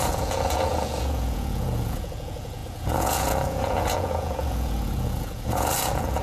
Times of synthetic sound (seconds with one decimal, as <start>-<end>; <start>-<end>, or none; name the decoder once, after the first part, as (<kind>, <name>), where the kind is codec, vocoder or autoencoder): 0.0-6.2 (vocoder, Vocos)